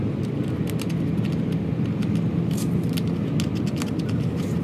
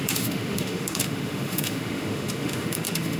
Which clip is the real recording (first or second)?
first